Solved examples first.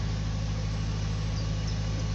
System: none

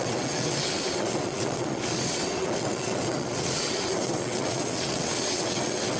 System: vocoder, WaveNeXt